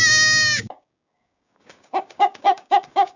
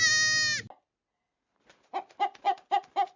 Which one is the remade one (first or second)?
first